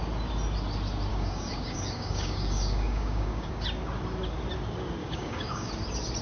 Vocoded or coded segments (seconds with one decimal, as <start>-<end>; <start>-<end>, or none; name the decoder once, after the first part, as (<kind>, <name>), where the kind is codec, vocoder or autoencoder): 1.1-3.5 (codec, DAC); 5.0-5.7